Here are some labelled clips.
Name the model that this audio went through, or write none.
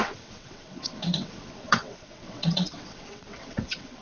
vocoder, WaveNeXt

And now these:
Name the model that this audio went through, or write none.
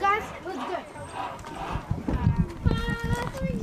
none